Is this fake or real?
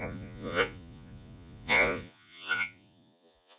fake